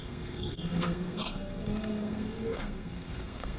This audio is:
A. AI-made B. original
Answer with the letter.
A